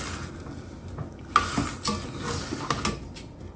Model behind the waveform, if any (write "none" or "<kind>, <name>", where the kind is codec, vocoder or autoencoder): none